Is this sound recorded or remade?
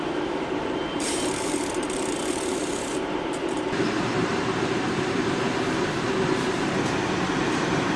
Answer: remade